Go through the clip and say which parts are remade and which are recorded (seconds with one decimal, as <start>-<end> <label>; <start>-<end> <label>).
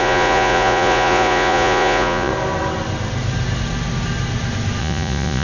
0.0-2.3 remade; 2.3-4.8 recorded; 4.8-5.4 remade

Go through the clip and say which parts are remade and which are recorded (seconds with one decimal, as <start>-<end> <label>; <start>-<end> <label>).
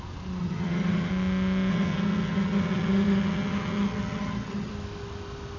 0.0-0.4 recorded; 0.4-1.1 remade; 1.1-1.7 recorded; 1.7-4.7 remade; 4.7-5.6 recorded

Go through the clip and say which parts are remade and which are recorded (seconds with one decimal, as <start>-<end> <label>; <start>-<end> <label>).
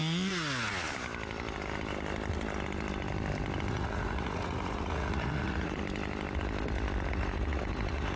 0.0-3.7 recorded; 3.7-5.8 remade; 5.8-7.1 recorded; 7.1-8.2 remade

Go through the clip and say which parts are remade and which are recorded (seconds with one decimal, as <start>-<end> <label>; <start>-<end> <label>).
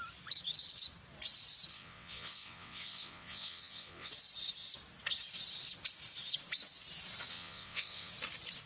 0.0-1.7 recorded; 1.7-4.1 remade; 4.1-7.3 recorded; 7.3-8.1 remade; 8.1-8.7 recorded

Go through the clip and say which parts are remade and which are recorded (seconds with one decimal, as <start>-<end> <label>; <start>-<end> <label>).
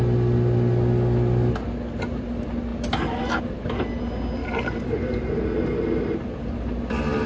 0.0-4.4 recorded; 4.4-5.4 remade; 5.4-7.3 recorded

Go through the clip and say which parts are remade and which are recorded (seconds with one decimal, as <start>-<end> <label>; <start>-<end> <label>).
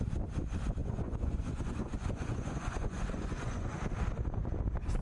0.0-0.8 recorded; 0.8-3.8 remade; 3.8-5.0 recorded